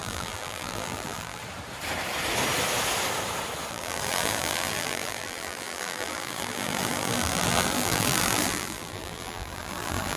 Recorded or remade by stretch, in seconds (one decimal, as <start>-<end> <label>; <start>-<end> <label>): 0.0-1.4 remade; 1.4-3.7 recorded; 3.7-10.2 remade